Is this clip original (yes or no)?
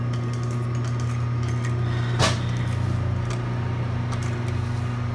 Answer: yes